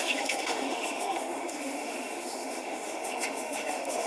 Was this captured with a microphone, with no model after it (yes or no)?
no